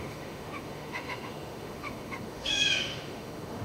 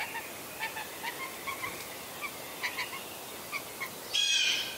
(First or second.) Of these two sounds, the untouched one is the second